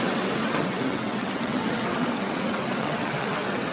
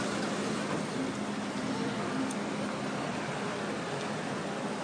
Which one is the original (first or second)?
second